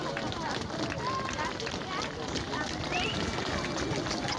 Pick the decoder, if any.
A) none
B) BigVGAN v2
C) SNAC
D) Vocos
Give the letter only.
A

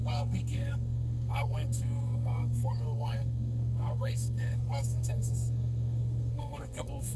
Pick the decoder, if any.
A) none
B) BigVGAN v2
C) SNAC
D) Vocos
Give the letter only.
C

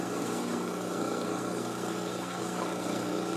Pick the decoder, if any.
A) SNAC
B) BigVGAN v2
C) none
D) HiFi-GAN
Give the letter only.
A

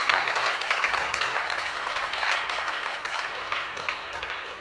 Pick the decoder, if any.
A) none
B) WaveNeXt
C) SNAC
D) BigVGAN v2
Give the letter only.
C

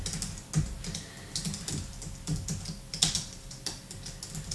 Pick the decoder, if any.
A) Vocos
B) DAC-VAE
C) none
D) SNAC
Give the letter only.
C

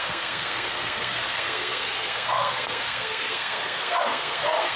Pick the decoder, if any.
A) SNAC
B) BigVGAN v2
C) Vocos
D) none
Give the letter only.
A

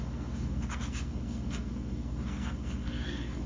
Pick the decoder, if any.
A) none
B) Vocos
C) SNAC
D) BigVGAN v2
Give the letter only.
C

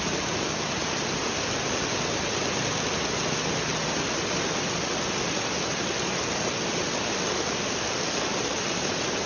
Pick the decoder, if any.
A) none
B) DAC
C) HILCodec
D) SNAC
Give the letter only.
A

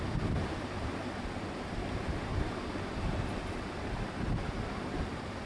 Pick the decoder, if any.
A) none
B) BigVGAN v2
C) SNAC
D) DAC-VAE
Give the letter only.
A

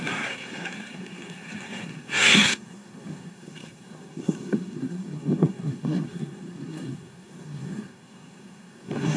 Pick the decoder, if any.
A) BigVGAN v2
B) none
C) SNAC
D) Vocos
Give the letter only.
C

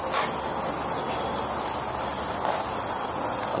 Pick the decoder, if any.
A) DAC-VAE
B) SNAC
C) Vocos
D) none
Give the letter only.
D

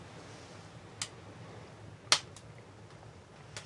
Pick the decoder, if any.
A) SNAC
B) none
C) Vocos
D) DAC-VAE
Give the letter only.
B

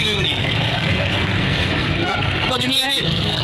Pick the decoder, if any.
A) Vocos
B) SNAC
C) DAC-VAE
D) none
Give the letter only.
B